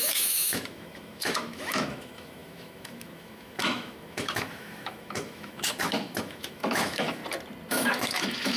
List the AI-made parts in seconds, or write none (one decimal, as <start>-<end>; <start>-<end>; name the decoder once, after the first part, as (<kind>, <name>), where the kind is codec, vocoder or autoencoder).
0.0-7.2 (autoencoder, DAC-VAE); 7.7-8.6